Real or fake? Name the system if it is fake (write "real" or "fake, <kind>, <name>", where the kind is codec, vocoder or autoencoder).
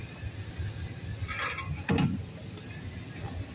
real